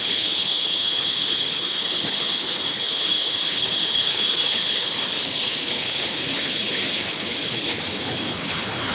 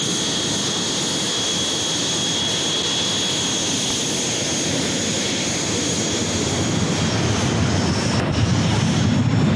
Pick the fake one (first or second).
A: first